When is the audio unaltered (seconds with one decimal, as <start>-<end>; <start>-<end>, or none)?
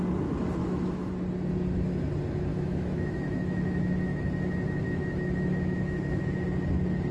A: 0.0-0.6; 1.1-2.5; 6.2-7.1